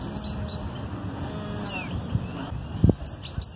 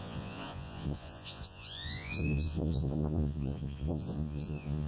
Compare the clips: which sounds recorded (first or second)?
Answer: first